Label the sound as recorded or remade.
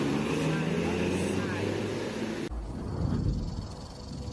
recorded